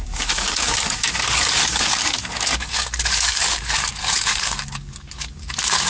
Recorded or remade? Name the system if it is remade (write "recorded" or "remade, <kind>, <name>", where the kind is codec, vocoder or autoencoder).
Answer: remade, codec, DAC